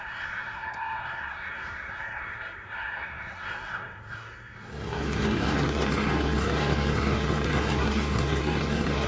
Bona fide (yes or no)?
no